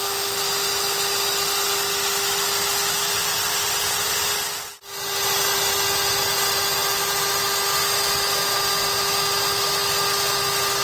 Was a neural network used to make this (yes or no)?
no